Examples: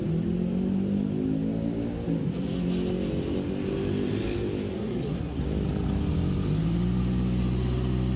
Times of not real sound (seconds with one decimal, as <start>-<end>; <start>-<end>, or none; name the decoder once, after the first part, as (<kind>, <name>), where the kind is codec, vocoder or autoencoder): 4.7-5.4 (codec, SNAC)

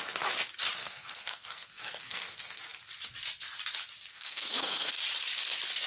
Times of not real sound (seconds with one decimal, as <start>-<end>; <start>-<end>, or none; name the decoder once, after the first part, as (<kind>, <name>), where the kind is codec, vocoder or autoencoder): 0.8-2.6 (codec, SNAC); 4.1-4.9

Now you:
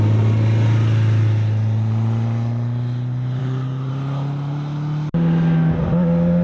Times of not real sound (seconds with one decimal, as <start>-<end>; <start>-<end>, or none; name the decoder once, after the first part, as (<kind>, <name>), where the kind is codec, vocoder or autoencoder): 3.4-3.9 (codec, DAC)